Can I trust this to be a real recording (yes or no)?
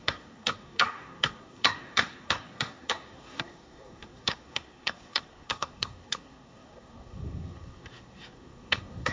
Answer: no